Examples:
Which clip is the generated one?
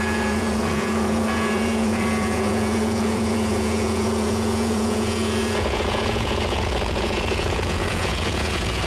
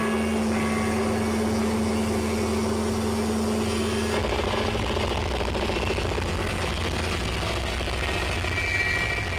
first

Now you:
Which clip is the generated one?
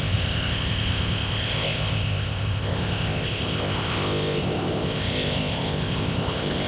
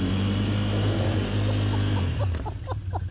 first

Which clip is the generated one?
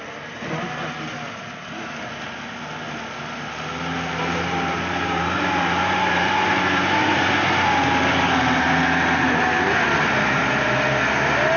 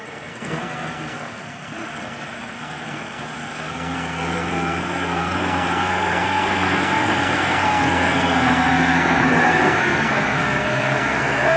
second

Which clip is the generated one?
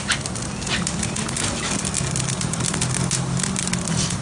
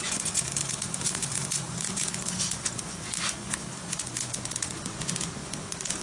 second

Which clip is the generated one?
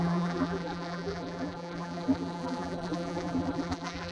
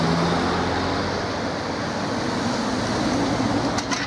first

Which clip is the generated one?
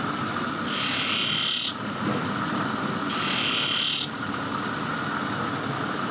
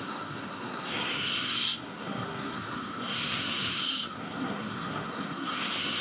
second